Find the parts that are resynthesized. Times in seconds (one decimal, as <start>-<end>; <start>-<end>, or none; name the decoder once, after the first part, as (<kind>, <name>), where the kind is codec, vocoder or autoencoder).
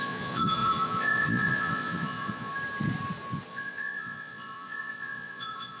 0.0-2.5 (vocoder, Vocos); 3.5-5.8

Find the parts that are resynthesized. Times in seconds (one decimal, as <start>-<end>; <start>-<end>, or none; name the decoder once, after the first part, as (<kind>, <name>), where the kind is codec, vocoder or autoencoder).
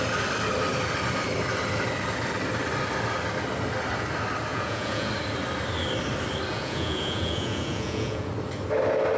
4.5-5.1 (vocoder, Vocos); 6.5-8.3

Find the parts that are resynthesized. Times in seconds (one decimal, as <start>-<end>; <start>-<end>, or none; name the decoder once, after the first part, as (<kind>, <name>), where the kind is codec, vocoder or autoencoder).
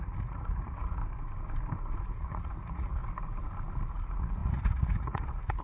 0.0-1.0 (vocoder, Vocos); 2.0-3.0; 3.9-5.6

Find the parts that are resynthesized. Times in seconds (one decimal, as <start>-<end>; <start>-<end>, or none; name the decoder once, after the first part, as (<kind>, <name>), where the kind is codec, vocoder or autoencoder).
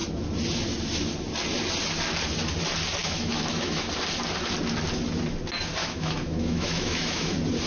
3.0-3.9 (autoencoder, DAC-VAE); 5.8-7.3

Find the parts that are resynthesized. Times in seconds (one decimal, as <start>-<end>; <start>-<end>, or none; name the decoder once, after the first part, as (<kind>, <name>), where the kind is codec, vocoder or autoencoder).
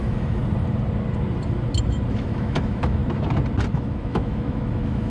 0.0-0.4 (autoencoder, DAC-VAE); 2.1-3.0; 3.7-5.1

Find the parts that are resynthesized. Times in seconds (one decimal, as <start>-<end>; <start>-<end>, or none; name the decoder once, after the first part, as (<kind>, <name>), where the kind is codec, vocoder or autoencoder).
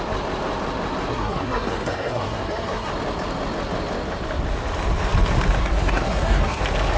1.1-2.9 (codec, SNAC); 5.6-6.6